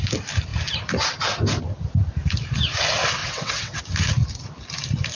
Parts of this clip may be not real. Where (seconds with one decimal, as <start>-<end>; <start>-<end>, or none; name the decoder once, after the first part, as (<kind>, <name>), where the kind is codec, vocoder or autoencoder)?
3.2-3.8 (vocoder, WaveNeXt)